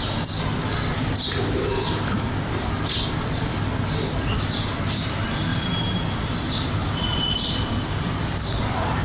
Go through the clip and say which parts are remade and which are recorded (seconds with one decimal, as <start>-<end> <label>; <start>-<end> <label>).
0.0-5.5 recorded; 5.5-8.2 remade; 8.2-9.0 recorded